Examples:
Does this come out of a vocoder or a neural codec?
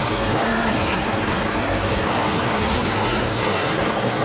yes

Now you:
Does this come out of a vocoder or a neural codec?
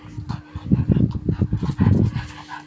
no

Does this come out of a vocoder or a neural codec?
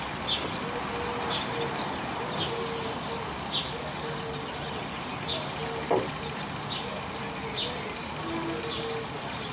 no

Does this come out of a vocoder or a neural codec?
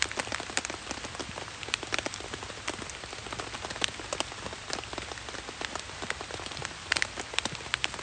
no